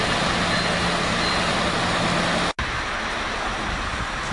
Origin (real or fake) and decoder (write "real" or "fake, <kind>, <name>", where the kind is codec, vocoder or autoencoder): real